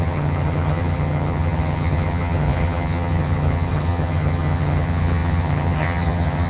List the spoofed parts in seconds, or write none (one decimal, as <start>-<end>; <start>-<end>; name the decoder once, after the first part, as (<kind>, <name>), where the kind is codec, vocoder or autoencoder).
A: 0.0-6.5 (vocoder, HiFi-GAN)

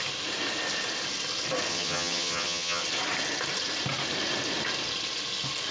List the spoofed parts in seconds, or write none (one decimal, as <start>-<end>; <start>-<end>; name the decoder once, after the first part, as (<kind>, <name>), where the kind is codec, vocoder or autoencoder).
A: 1.7-2.8 (vocoder, HiFi-GAN)

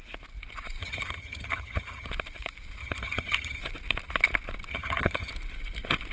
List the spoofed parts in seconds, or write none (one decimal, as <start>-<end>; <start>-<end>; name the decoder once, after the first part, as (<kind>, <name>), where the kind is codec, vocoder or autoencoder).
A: 0.8-2.1 (vocoder, HiFi-GAN); 2.8-3.6; 4.7-5.3

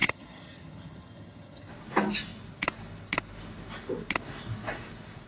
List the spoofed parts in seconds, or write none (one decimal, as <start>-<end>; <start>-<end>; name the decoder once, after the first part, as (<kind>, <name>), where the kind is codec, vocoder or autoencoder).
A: 0.0-1.7 (vocoder, HiFi-GAN)

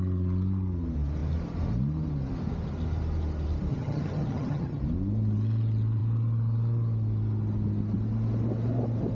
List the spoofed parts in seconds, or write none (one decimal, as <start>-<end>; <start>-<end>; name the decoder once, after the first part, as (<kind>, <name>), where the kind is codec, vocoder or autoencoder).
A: 3.7-4.8 (vocoder, HiFi-GAN)

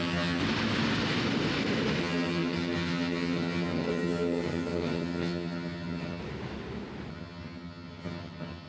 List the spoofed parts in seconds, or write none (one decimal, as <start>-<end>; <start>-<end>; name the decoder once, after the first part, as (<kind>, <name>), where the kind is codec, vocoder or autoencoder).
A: 0.0-0.4 (vocoder, HiFi-GAN); 2.0-6.2; 7.1-8.7